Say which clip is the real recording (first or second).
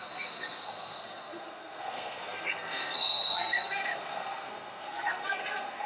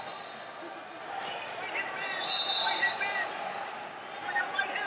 second